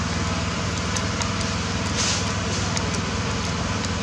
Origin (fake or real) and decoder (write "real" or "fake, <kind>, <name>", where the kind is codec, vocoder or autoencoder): real